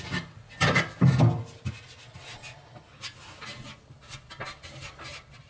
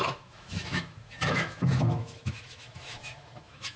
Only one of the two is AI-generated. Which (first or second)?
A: second